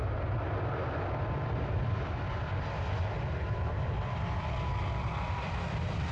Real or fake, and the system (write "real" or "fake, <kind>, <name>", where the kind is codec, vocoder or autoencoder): fake, vocoder, BigVGAN v2